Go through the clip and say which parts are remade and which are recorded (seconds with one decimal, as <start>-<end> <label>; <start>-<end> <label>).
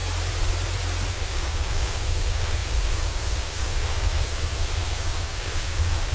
0.0-1.1 recorded; 1.1-6.1 remade